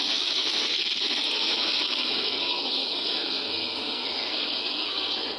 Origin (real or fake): fake